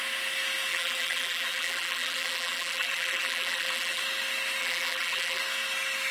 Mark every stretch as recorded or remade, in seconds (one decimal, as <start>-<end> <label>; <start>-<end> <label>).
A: 0.0-0.7 recorded; 0.7-4.0 remade; 4.0-4.6 recorded; 4.6-5.4 remade; 5.4-6.1 recorded